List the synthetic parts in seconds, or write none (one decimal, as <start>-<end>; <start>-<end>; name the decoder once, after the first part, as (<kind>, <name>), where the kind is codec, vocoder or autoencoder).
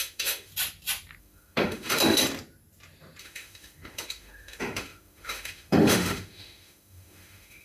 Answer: 0.0-0.5 (autoencoder, DAC-VAE); 1.2-2.2; 3.2-7.6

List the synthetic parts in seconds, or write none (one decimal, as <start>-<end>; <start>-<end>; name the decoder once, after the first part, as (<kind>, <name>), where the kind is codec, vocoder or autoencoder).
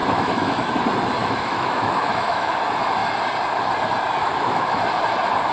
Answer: 0.0-0.7 (autoencoder, DAC-VAE); 1.2-2.5; 4.2-4.8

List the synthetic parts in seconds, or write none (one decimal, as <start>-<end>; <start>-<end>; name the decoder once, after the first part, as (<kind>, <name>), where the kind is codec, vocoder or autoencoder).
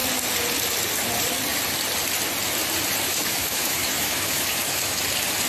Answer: 3.1-5.0 (autoencoder, DAC-VAE)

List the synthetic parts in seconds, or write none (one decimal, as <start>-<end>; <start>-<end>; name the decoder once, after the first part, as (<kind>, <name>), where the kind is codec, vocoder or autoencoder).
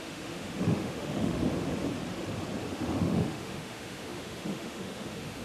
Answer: 0.0-1.4 (autoencoder, DAC-VAE); 2.7-5.4